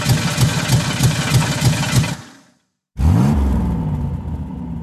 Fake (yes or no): no